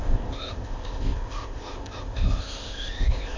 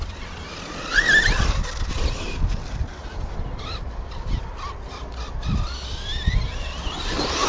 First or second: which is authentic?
second